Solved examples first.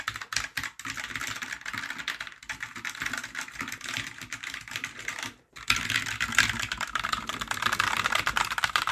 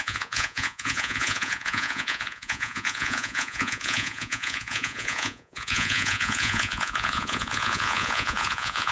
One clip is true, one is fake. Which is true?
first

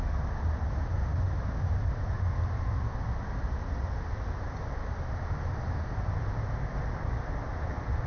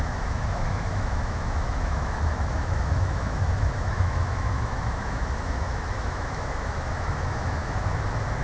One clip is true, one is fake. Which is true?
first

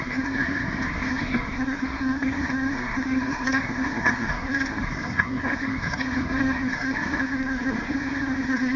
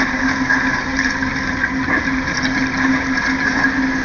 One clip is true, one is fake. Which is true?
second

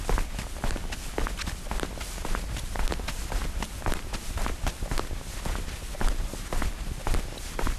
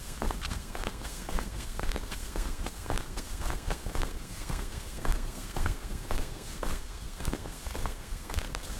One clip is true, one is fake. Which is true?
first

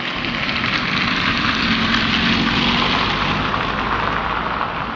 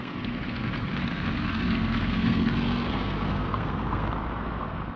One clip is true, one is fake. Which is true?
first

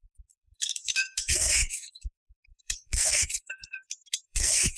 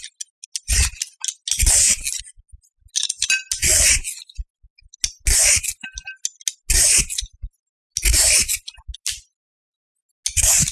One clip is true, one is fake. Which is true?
second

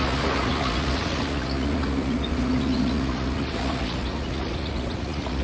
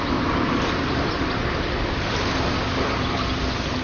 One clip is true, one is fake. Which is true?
second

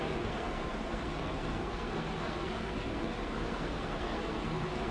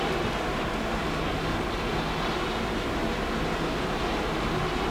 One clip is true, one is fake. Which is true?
second